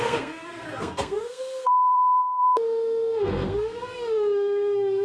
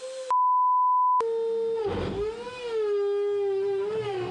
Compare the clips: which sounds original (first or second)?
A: second